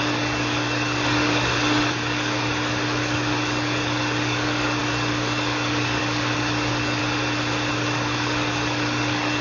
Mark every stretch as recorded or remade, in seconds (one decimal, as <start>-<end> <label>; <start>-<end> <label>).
0.0-7.0 remade; 7.0-7.7 recorded; 7.7-9.4 remade